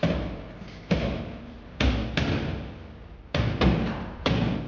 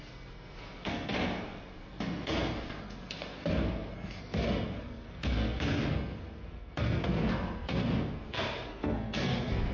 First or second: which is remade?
second